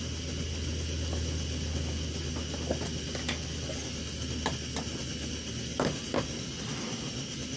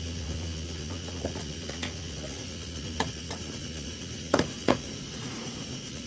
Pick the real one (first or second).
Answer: first